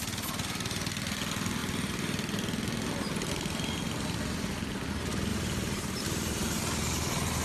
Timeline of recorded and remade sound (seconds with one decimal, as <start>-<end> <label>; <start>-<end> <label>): 0.0-5.3 recorded; 5.3-6.6 remade; 6.6-7.4 recorded